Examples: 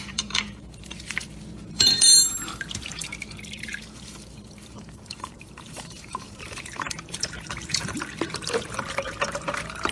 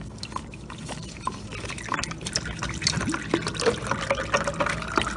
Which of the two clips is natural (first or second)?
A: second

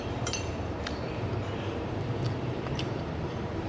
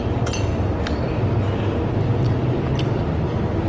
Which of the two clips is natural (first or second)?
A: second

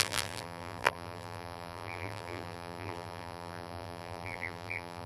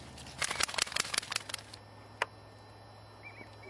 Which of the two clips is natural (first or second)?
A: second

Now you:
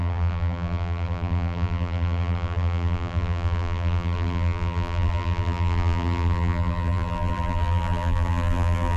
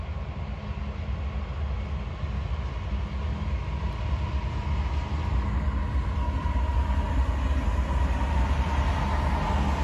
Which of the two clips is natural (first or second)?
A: second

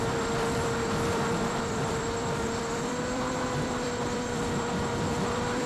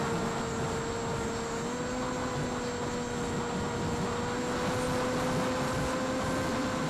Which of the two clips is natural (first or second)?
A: second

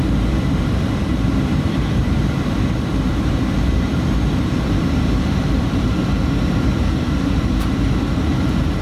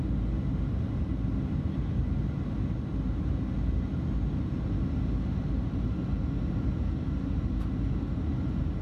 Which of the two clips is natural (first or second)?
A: second